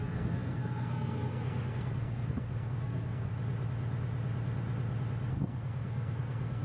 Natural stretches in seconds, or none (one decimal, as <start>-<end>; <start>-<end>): 3.3-5.3